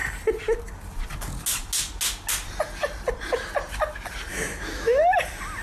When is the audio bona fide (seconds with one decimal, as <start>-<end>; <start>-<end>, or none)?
0.0-4.3; 5.0-5.6